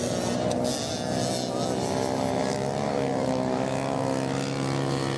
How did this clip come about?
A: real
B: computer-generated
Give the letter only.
A